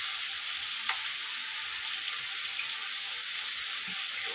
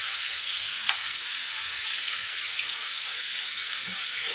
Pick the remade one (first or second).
second